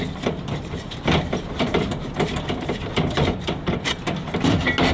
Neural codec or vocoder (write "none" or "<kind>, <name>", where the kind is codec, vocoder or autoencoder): none